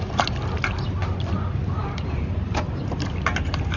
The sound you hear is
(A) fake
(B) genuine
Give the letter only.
B